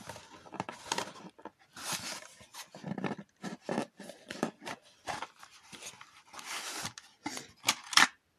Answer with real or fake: real